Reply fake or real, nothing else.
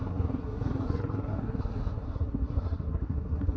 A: fake